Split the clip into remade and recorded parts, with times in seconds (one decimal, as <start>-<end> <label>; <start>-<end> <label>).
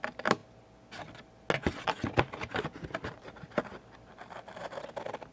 0.0-5.3 recorded